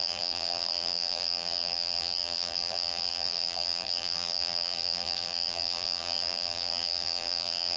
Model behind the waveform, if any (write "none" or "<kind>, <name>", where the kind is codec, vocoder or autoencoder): vocoder, BigVGAN v2